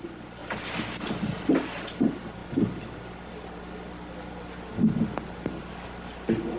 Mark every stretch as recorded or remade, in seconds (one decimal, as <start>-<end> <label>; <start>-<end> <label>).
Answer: 0.0-6.6 recorded